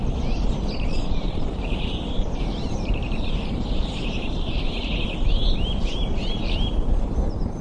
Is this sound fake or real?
fake